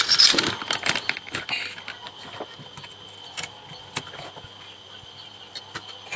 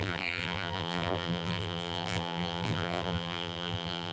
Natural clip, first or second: first